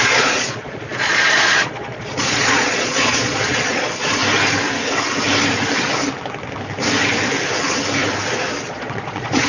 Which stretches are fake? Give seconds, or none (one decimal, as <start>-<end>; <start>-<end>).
0.0-4.2; 8.7-9.5